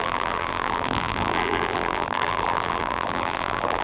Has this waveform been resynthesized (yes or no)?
yes